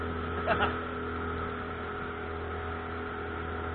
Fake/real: real